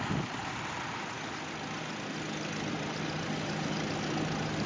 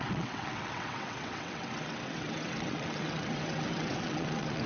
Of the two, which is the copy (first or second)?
second